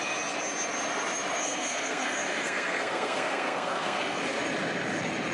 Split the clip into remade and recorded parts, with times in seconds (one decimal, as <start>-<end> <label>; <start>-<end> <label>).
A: 0.0-1.4 recorded; 1.4-4.2 remade; 4.2-5.3 recorded